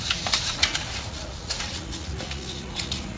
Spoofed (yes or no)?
yes